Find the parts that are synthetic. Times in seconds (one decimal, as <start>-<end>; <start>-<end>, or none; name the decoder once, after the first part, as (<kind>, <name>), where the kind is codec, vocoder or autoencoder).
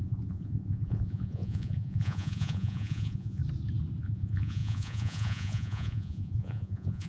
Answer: 0.0-3.4 (vocoder, Vocos); 4.0-7.1